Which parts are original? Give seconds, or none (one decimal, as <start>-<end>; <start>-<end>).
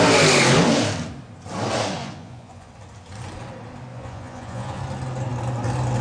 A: 0.0-2.0; 2.7-3.9; 4.8-6.0